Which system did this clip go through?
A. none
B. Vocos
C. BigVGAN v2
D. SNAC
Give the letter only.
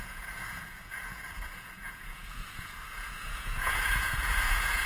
B